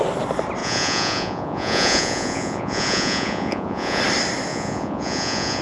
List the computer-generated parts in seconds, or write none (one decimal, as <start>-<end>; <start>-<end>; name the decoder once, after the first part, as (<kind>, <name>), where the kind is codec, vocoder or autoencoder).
0.6-4.0 (vocoder, Vocos); 4.5-5.6